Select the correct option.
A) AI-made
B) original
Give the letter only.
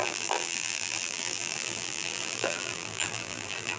A